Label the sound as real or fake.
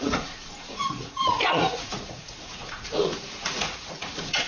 fake